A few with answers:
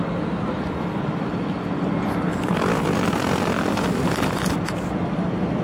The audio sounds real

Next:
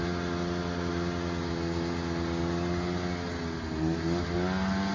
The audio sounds real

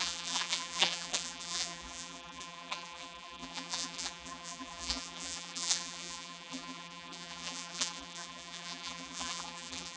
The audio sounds fake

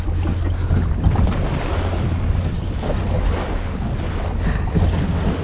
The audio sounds real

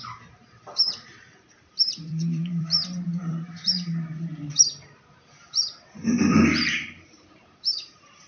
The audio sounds fake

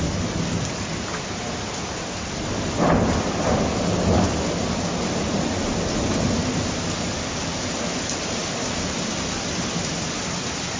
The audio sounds fake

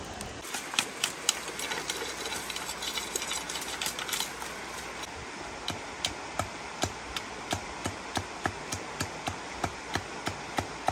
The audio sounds real